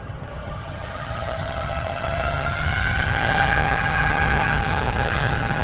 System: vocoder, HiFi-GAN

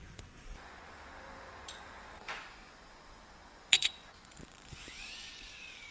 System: vocoder, Vocos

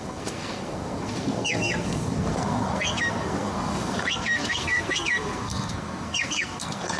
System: codec, SNAC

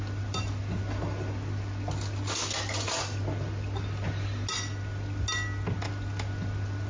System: none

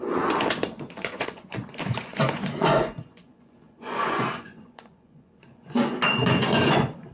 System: vocoder, Vocos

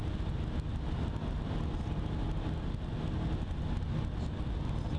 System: none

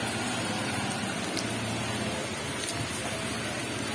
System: none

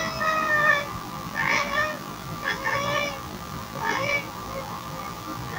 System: vocoder, BigVGAN v2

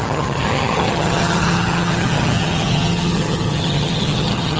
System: vocoder, HiFi-GAN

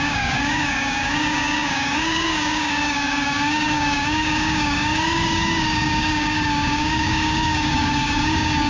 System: codec, DAC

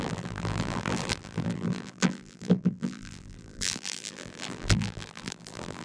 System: vocoder, BigVGAN v2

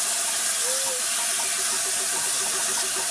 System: none